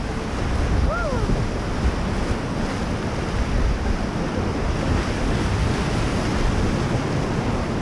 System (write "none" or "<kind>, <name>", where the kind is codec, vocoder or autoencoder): none